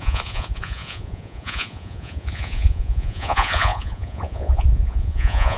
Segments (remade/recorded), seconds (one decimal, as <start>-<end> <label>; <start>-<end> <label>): 0.0-5.6 remade